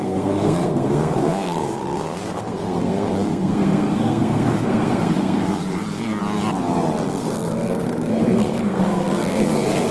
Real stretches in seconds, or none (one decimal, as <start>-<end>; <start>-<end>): 6.2-7.1